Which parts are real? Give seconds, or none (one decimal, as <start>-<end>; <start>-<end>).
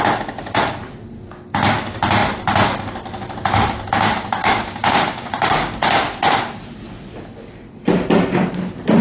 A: 0.0-4.4; 5.8-9.0